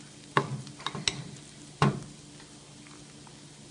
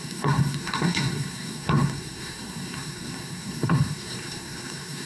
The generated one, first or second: second